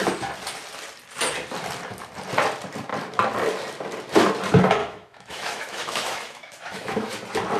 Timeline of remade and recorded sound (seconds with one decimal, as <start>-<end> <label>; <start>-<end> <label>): 0.0-4.8 recorded; 4.8-7.1 remade; 7.1-7.6 recorded